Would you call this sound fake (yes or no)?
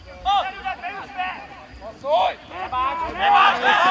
no